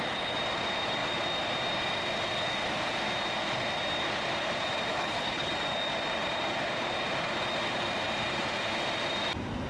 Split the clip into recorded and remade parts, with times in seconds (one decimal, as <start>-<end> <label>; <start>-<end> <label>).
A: 0.0-4.9 recorded; 4.9-5.5 remade; 5.5-9.7 recorded